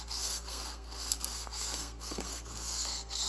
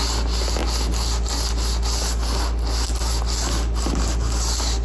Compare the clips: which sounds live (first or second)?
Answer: second